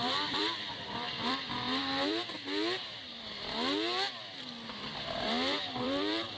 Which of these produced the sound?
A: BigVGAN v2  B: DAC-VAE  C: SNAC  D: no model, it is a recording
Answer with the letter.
A